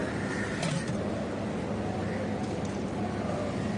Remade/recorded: recorded